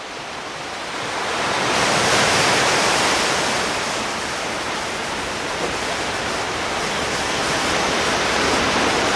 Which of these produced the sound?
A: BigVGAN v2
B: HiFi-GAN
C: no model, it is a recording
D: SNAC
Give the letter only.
A